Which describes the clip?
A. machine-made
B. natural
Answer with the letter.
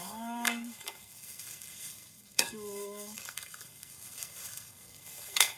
A